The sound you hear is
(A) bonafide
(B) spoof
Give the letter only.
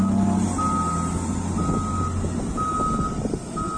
A